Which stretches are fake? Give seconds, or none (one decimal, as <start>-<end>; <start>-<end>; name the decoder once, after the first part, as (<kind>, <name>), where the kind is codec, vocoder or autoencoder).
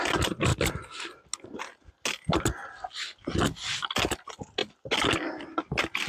none